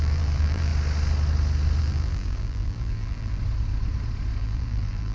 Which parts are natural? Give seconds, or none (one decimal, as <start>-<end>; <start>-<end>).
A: 0.7-1.8; 3.4-4.4